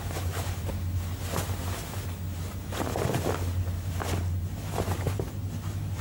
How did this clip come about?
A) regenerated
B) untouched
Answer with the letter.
B